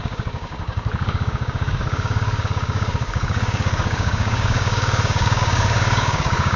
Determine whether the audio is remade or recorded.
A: remade